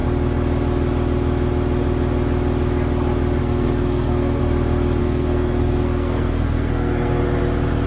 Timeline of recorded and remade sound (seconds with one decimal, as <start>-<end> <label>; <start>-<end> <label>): 0.0-3.4 recorded; 3.4-4.4 remade; 4.4-5.0 recorded; 5.0-7.2 remade; 7.2-7.9 recorded